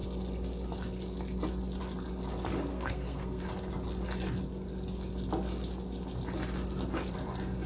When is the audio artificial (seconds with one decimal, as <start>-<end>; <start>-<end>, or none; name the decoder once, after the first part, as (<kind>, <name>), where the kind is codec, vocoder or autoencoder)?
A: 2.7-3.4 (codec, SNAC)